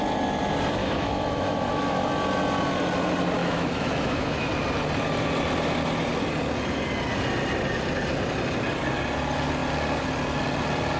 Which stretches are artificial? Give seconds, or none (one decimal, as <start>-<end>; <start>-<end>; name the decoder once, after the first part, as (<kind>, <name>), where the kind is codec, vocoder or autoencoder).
0.8-2.0 (autoencoder, DAC-VAE); 3.4-4.5